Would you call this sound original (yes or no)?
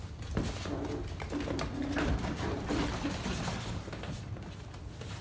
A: yes